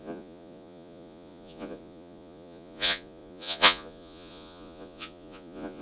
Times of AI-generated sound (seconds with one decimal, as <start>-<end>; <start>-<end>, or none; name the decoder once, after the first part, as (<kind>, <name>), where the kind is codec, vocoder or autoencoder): 0.0-5.8 (vocoder, Vocos)